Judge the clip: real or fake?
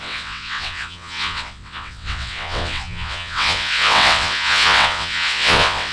fake